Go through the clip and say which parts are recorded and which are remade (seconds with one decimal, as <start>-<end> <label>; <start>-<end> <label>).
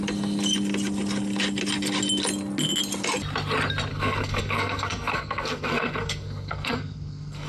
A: 0.0-3.9 recorded; 3.9-7.5 remade